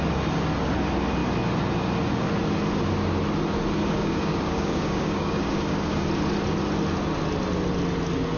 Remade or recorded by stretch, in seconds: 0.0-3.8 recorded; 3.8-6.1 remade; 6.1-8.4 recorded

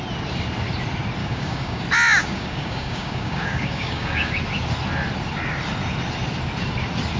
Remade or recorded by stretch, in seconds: 0.0-1.2 recorded; 1.2-1.8 remade; 1.8-2.2 recorded; 2.2-4.3 remade; 4.3-7.2 recorded

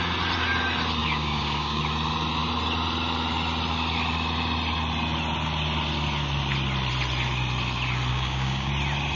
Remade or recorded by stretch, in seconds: 0.0-1.0 recorded; 1.0-1.8 remade; 1.8-8.1 recorded; 8.1-8.7 remade; 8.7-9.2 recorded

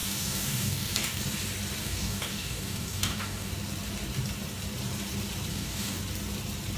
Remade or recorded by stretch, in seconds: 0.0-1.2 remade; 1.2-1.8 recorded; 1.8-3.5 remade; 3.5-5.5 recorded; 5.5-6.0 remade; 6.0-6.8 recorded

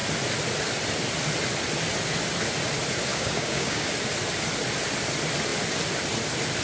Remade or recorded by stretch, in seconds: 0.0-3.1 recorded; 3.1-3.9 remade; 3.9-6.6 recorded

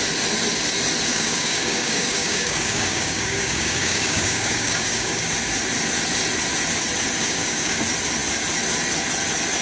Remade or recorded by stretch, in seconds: 0.0-1.1 recorded; 1.1-5.2 remade; 5.2-7.2 recorded; 7.2-7.8 remade; 7.8-9.6 recorded